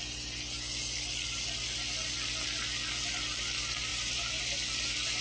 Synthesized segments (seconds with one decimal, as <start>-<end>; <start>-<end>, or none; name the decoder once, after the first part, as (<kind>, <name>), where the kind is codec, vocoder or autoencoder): 3.9-4.4 (vocoder, BigVGAN v2)